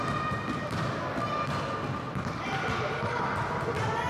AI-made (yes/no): no